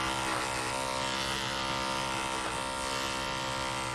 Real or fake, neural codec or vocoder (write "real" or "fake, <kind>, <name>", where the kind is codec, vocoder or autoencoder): real